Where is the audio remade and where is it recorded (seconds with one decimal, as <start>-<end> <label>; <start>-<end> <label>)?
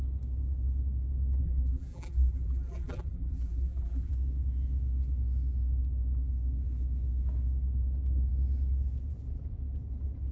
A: 0.0-1.4 recorded; 1.4-4.1 remade; 4.1-10.3 recorded